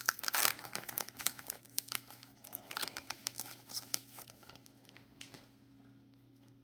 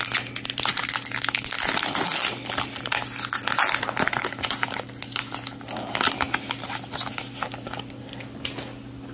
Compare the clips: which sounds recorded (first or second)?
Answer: second